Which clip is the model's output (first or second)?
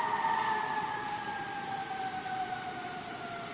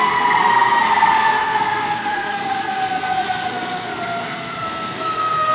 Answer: second